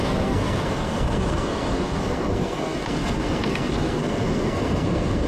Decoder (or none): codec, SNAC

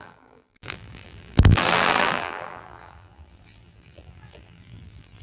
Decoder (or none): vocoder, BigVGAN v2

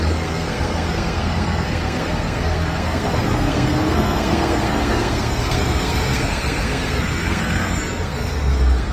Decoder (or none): codec, SNAC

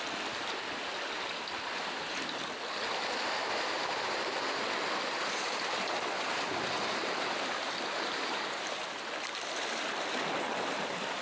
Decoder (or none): none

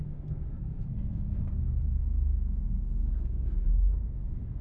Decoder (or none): codec, SNAC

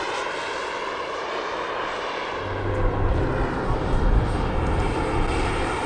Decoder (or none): none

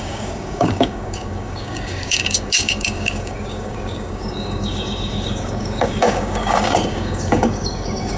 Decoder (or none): codec, DAC